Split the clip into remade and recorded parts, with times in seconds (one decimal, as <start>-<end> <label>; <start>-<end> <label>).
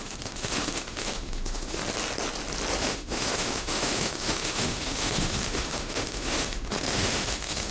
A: 0.0-1.8 remade; 1.8-2.8 recorded; 2.8-7.7 remade